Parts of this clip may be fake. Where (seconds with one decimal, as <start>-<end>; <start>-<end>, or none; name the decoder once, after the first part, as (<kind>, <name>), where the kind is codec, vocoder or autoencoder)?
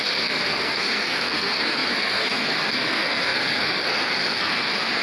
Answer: 0.0-5.0 (codec, SNAC)